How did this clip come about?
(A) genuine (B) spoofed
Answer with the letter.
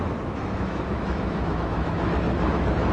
B